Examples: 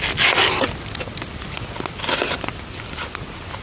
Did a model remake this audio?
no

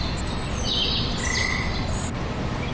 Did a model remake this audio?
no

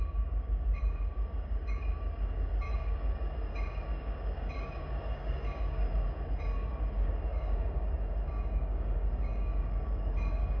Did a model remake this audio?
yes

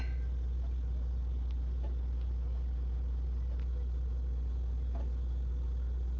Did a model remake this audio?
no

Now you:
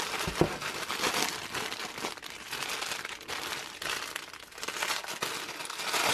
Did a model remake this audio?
no